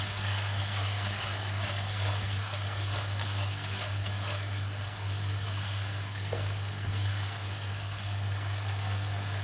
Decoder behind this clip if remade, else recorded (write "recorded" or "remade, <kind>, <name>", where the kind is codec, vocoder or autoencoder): remade, codec, SNAC